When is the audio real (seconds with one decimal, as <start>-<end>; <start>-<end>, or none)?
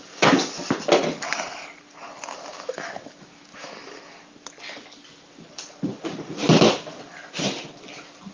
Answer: 0.0-2.5; 4.2-8.3